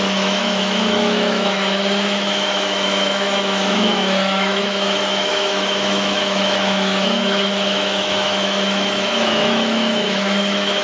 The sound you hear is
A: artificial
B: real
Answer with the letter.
A